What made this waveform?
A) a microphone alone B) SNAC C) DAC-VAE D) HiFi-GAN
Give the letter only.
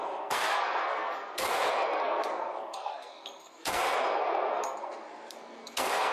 B